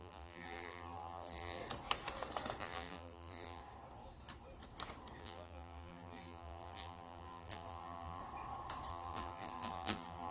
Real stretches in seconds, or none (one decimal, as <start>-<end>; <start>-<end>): 1.6-2.6; 3.6-5.2; 8.2-8.9